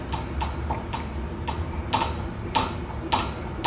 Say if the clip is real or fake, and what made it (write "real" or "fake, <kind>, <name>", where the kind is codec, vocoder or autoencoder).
real